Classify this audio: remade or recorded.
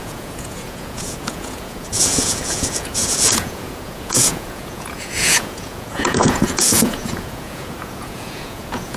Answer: remade